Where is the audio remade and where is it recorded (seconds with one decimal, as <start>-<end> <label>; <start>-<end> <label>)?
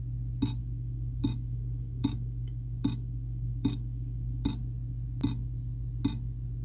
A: 0.0-0.6 recorded; 0.6-4.6 remade; 4.6-6.6 recorded